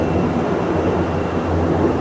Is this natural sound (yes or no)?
yes